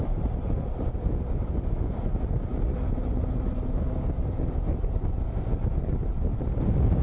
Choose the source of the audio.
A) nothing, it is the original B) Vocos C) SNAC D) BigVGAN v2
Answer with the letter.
A